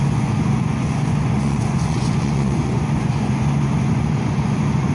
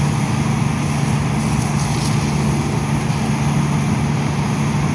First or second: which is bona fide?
second